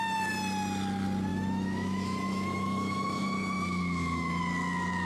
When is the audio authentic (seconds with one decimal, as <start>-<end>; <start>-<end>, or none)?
0.0-1.3; 4.4-5.1